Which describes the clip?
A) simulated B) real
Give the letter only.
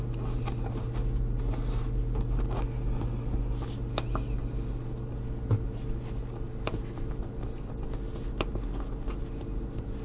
B